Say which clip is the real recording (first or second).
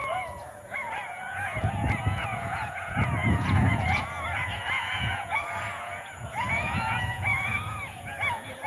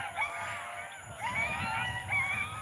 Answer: second